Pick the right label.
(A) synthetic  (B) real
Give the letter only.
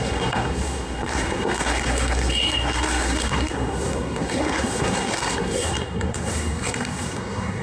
A